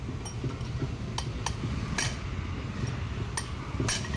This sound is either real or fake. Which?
real